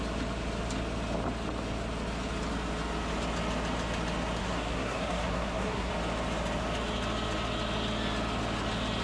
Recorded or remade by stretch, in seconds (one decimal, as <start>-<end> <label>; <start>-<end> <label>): 0.0-4.4 recorded; 4.4-5.9 remade; 5.9-9.0 recorded